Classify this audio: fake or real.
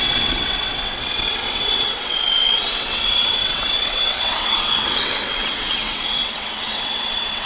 fake